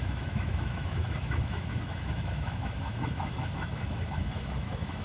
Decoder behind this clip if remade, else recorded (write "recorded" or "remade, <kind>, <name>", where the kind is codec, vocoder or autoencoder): remade, autoencoder, DAC-VAE